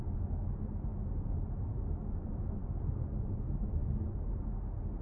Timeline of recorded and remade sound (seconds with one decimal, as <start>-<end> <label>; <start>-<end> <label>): 0.0-5.0 recorded

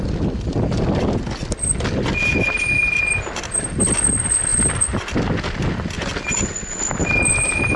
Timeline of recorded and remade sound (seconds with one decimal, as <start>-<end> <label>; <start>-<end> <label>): 0.0-7.8 recorded

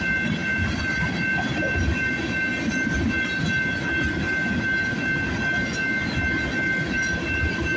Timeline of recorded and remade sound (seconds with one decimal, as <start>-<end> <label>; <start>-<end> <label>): 0.0-7.8 recorded

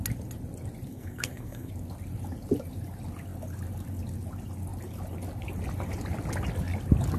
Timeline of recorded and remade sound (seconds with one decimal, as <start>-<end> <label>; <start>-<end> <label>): 0.0-0.9 recorded; 0.9-1.7 remade; 1.7-7.2 recorded

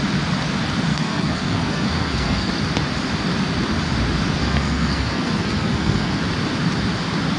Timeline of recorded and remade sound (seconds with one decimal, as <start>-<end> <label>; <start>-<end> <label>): 0.0-0.9 recorded; 0.9-2.5 remade; 2.5-4.4 recorded; 4.4-6.2 remade; 6.2-7.4 recorded

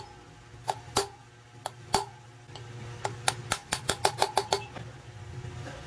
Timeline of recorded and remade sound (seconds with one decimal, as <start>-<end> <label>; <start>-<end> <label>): 0.0-5.9 recorded

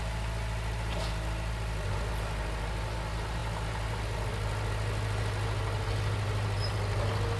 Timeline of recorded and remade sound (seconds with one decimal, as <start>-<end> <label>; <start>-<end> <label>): 0.0-7.4 recorded

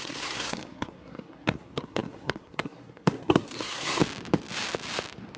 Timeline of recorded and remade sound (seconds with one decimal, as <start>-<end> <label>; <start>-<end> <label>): 0.0-4.0 remade; 4.0-5.4 recorded